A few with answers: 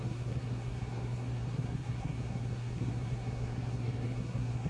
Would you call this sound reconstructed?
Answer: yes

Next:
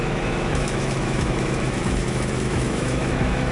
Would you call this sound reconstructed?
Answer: yes